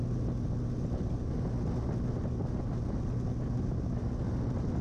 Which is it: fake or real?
real